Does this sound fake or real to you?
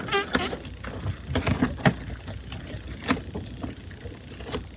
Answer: real